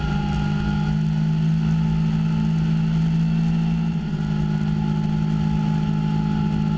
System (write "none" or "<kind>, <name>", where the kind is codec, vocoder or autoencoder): none